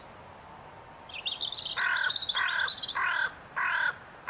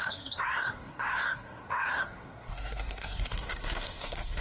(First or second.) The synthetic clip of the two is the second